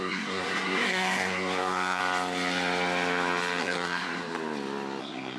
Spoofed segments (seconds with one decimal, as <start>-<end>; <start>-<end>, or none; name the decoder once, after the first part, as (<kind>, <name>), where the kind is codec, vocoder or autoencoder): 0.0-2.0 (codec, SNAC); 3.6-4.2; 5.0-5.4